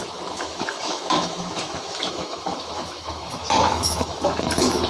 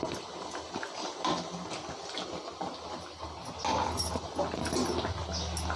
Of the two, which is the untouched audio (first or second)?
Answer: second